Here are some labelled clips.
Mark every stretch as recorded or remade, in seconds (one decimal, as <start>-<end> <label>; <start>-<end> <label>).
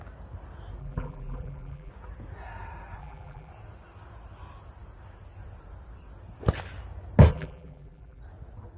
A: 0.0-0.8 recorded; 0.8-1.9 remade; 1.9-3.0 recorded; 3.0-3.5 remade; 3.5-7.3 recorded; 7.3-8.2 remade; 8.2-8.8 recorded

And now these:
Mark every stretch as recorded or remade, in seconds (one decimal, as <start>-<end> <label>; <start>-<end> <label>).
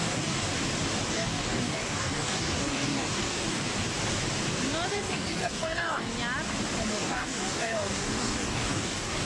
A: 0.0-0.5 remade; 0.5-1.1 recorded; 1.1-3.7 remade; 3.7-4.9 recorded; 4.9-6.1 remade; 6.1-6.9 recorded; 6.9-9.3 remade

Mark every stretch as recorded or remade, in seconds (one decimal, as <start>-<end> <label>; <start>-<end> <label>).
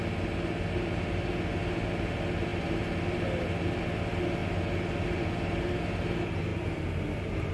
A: 0.0-6.5 recorded; 6.5-7.5 remade